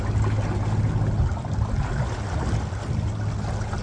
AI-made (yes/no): no